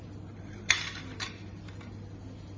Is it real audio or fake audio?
real